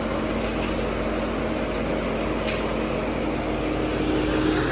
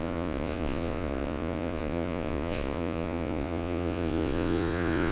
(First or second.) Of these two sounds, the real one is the first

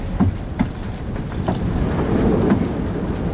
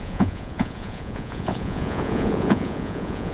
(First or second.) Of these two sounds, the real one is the first